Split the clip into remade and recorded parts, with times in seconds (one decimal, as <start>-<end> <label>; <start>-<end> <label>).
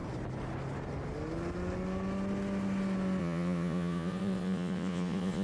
0.0-3.2 recorded; 3.2-5.4 remade